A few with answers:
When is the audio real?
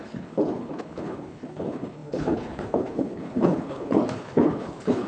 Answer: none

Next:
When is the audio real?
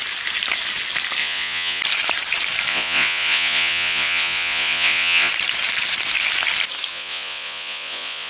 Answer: 0.0-1.2; 1.8-2.7; 5.3-6.9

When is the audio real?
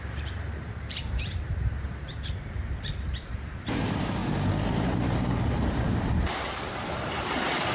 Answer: 4.2-4.7